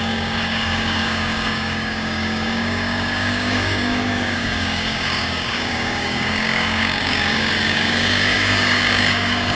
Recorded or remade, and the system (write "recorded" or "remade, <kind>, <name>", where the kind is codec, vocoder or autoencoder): remade, codec, DAC